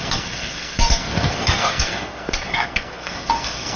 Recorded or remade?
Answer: remade